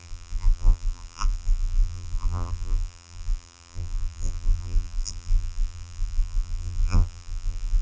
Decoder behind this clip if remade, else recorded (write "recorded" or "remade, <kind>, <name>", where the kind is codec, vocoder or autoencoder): remade, vocoder, BigVGAN v2